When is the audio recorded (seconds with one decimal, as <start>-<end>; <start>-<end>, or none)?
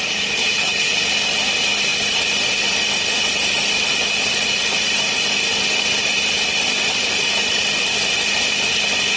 0.0-0.4; 0.9-9.2